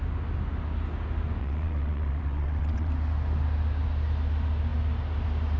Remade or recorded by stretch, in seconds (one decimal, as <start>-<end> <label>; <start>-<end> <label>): 0.0-1.4 recorded; 1.4-2.9 remade; 2.9-5.6 recorded